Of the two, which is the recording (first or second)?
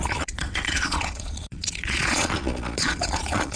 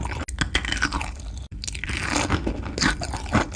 second